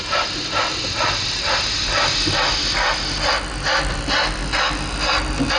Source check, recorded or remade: recorded